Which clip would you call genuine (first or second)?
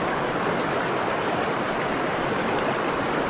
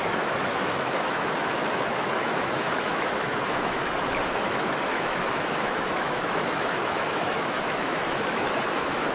first